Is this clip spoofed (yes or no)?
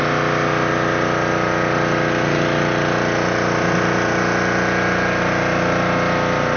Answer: no